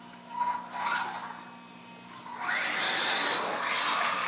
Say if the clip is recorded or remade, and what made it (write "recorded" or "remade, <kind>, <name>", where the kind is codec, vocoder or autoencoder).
recorded